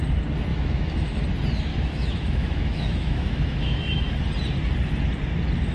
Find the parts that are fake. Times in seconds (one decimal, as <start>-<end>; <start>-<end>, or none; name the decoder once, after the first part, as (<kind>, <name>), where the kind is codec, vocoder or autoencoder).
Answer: 0.5-1.2 (autoencoder, DAC-VAE); 1.7-4.1